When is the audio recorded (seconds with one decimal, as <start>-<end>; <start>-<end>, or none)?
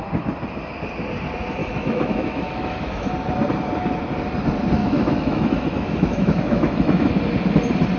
0.0-1.6; 3.1-4.8; 7.1-8.0